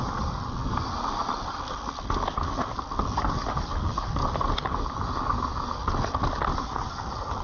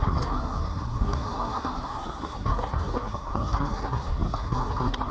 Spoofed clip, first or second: second